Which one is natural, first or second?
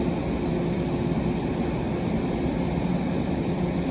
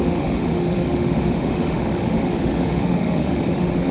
first